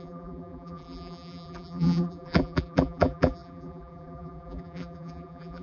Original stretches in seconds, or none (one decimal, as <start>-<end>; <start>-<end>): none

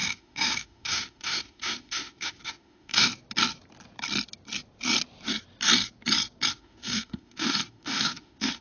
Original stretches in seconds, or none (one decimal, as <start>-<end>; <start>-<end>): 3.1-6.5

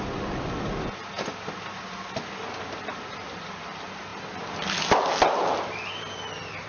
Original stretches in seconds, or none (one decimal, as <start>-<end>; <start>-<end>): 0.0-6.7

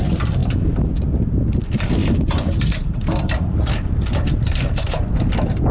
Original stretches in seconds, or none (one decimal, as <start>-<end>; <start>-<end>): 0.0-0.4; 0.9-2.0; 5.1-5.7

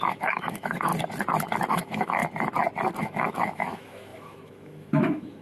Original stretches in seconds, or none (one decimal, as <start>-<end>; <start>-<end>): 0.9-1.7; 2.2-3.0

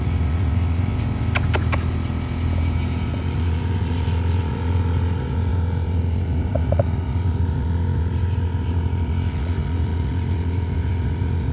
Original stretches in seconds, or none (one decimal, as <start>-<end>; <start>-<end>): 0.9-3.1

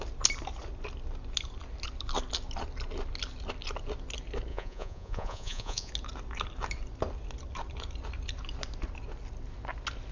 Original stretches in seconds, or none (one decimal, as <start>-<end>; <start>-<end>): 0.0-4.5; 5.9-10.1

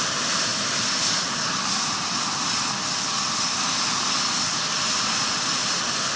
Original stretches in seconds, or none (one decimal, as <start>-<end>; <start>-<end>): 0.0-6.2